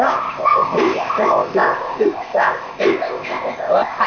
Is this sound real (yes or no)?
no